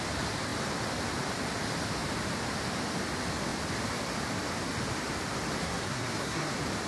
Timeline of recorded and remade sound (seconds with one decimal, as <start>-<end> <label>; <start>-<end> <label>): 0.0-5.6 recorded; 5.6-6.5 remade; 6.5-6.9 recorded